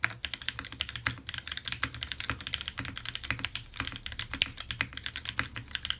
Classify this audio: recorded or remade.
recorded